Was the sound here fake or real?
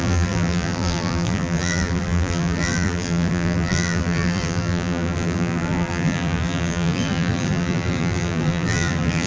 fake